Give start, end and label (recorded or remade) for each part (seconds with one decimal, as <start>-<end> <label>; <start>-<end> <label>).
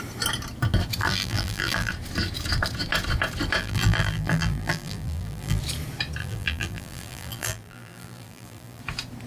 0.0-1.0 recorded; 1.0-1.9 remade; 1.9-3.6 recorded; 3.6-5.6 remade; 5.6-6.2 recorded; 6.2-8.8 remade; 8.8-9.3 recorded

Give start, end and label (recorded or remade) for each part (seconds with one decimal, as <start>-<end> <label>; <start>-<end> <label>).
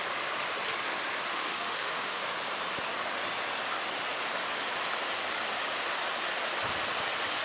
0.0-1.3 recorded; 1.3-2.2 remade; 2.2-7.4 recorded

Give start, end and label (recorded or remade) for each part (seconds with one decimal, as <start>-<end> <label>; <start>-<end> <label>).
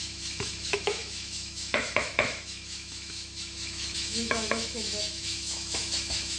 0.0-6.4 remade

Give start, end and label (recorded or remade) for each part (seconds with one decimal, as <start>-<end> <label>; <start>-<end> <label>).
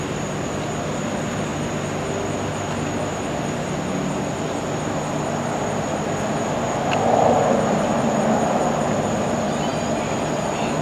0.0-10.8 recorded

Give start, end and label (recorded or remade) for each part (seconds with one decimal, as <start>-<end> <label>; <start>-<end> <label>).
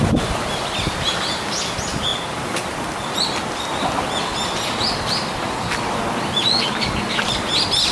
0.0-7.9 recorded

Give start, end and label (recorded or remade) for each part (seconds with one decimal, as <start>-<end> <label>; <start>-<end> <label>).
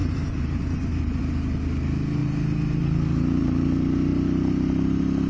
0.0-1.2 remade; 1.2-5.3 recorded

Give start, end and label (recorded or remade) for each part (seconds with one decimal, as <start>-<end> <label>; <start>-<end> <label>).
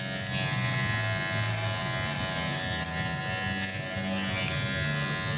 0.0-5.4 recorded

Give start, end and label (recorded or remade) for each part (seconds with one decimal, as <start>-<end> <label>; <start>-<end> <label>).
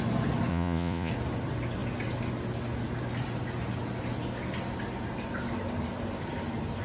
0.0-0.5 recorded; 0.5-1.1 remade; 1.1-6.8 recorded